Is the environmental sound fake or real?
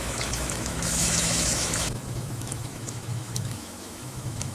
fake